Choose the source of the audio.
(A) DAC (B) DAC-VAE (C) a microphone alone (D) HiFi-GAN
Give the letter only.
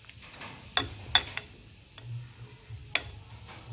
C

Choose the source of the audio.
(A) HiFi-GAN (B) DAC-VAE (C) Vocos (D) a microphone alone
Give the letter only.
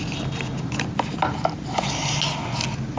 D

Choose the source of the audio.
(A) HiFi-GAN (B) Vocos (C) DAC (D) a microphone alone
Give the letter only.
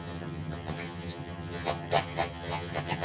A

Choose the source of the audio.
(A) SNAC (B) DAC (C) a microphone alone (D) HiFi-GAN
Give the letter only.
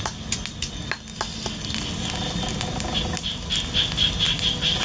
C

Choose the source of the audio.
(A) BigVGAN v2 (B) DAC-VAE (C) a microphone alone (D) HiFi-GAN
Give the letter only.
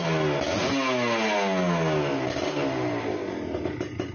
C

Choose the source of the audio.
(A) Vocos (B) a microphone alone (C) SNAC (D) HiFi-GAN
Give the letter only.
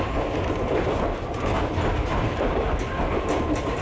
B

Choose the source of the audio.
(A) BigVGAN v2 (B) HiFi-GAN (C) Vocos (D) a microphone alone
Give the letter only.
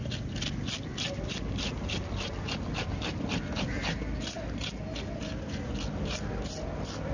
D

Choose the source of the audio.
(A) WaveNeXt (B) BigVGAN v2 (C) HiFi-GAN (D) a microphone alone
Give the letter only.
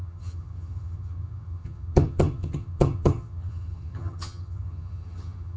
C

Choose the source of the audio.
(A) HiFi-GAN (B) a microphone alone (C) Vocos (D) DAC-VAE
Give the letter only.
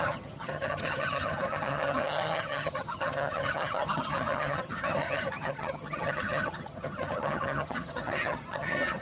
A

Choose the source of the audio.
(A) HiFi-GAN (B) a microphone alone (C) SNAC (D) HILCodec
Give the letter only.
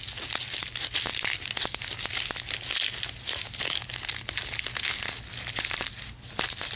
B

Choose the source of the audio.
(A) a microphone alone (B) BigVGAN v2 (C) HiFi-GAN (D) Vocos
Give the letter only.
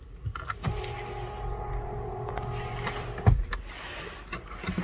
A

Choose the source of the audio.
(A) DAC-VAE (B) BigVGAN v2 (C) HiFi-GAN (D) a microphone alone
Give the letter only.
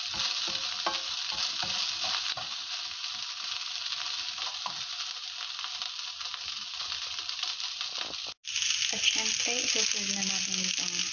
D